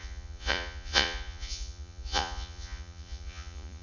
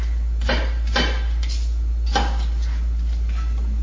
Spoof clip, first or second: first